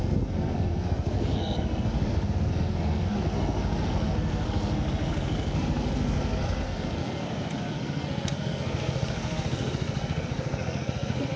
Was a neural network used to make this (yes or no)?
yes